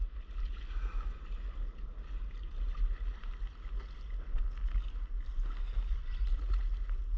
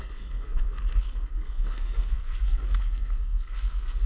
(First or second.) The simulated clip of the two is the second